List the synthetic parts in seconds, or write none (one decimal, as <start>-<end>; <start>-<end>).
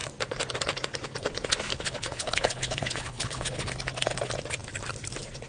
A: 1.7-3.7